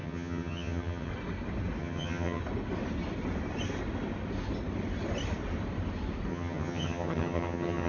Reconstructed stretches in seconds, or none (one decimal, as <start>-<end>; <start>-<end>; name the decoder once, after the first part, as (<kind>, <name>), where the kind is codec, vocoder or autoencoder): 0.0-1.1 (vocoder, HiFi-GAN); 1.8-2.4; 6.3-7.9

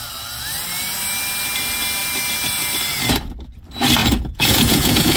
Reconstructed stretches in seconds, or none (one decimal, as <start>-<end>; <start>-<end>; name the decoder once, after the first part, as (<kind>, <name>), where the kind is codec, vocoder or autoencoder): 4.0-5.2 (vocoder, Vocos)

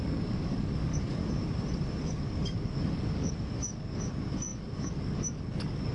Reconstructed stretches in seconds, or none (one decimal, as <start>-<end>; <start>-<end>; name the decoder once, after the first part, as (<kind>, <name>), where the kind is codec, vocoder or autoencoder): 0.0-1.2 (codec, DAC); 2.0-5.9